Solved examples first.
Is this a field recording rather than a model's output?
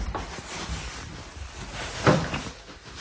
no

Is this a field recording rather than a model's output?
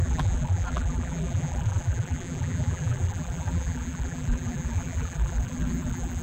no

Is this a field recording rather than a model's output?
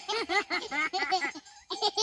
yes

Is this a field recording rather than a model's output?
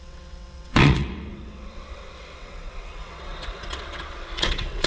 no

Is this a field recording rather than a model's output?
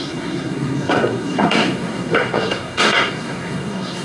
no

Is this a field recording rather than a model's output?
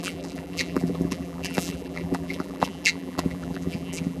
no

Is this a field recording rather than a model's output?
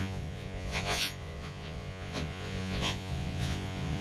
no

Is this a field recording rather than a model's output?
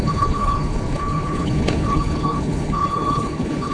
no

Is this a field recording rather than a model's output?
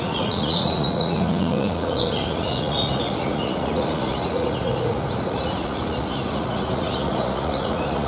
no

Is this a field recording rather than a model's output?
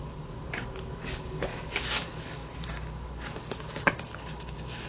no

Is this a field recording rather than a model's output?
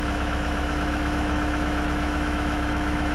no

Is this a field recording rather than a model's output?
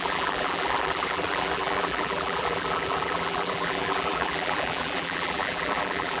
no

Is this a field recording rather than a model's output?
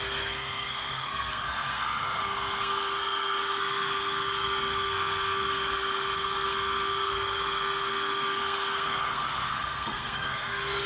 no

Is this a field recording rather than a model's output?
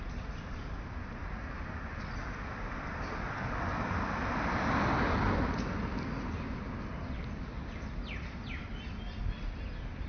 yes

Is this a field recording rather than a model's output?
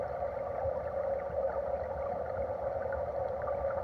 yes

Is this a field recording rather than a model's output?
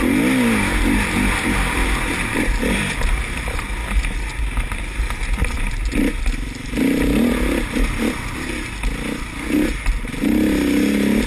yes